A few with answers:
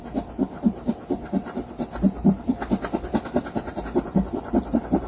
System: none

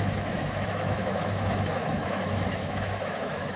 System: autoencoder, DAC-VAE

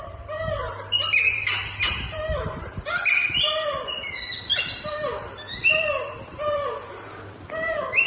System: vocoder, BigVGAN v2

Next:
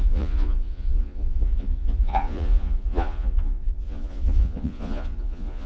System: vocoder, Vocos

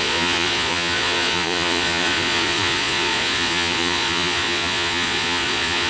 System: vocoder, Vocos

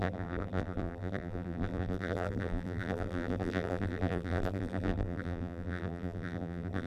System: vocoder, BigVGAN v2